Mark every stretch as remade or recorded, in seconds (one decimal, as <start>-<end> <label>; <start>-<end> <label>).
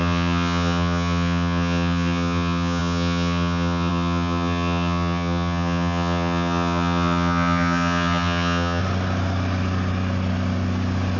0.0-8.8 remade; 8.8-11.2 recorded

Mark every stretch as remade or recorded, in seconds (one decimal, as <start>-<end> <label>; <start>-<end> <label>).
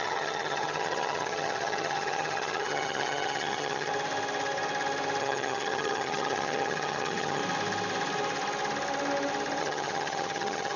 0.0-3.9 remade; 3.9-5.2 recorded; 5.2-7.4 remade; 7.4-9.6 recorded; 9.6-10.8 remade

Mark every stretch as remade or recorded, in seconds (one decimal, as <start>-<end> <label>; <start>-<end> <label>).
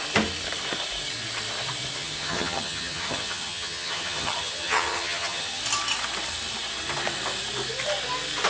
0.0-2.0 recorded; 2.0-5.6 remade; 5.6-8.5 recorded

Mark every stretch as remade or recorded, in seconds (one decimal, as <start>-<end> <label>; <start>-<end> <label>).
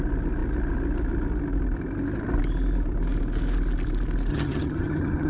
0.0-4.3 recorded; 4.3-5.3 remade